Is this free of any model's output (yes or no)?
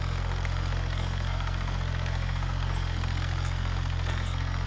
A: no